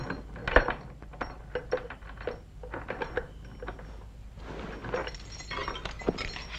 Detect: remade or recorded recorded